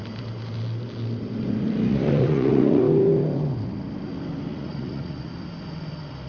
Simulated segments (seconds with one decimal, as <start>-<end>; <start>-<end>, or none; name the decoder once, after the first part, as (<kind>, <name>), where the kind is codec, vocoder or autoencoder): 1.9-2.8 (vocoder, Vocos); 4.5-5.3